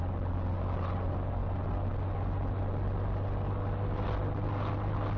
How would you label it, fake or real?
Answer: real